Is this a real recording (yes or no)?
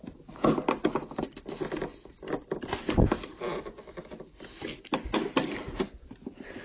yes